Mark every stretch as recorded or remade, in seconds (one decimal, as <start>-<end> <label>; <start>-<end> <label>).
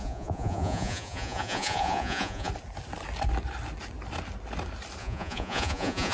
0.0-2.5 remade; 2.5-5.0 recorded; 5.0-6.1 remade